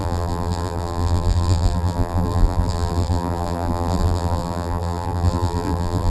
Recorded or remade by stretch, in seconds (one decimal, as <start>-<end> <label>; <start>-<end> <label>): 0.0-6.1 remade